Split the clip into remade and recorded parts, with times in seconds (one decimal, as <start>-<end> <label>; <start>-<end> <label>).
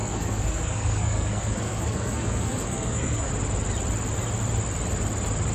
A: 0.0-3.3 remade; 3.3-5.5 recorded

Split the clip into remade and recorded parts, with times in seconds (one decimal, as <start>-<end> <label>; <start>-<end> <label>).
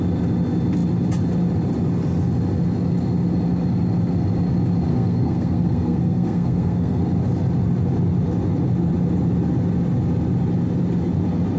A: 0.0-4.9 recorded; 4.9-7.0 remade; 7.0-11.6 recorded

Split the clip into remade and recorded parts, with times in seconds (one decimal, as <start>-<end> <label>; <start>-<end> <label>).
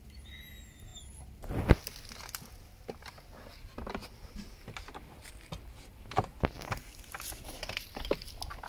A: 0.0-8.7 recorded